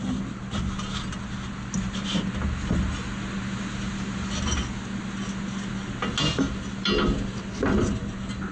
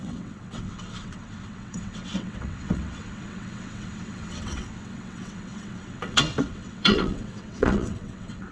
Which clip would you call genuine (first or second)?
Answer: first